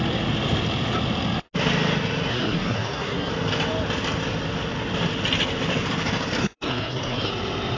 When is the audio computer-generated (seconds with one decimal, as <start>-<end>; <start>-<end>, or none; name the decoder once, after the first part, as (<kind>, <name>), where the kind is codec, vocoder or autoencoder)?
2.3-3.3 (codec, SNAC); 6.4-7.3